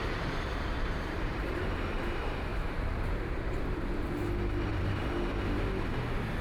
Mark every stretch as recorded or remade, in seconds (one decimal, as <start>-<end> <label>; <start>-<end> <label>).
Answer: 0.0-1.6 remade; 1.6-2.5 recorded; 2.5-3.6 remade; 3.6-4.7 recorded; 4.7-5.3 remade; 5.3-6.4 recorded